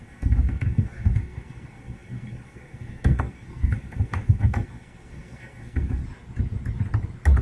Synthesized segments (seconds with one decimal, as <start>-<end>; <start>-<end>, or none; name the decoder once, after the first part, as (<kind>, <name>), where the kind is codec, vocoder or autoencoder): 0.0-6.0 (codec, SNAC)